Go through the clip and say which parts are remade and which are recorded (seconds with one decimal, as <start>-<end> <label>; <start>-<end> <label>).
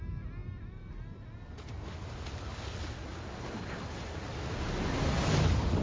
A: 0.0-5.8 recorded